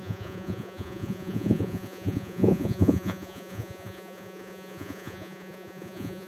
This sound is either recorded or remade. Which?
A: remade